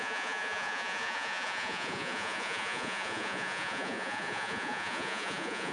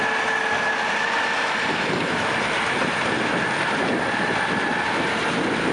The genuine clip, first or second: second